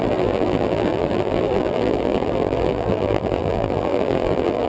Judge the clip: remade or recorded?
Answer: remade